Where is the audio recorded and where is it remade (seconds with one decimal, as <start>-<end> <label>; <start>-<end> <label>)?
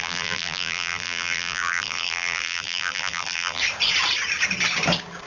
0.0-3.6 remade; 3.6-5.3 recorded